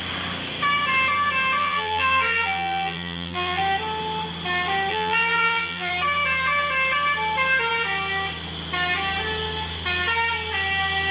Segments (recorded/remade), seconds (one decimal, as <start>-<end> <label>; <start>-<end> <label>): 0.0-1.6 recorded; 1.6-3.6 remade; 3.6-4.9 recorded; 4.9-5.9 remade; 5.9-11.1 recorded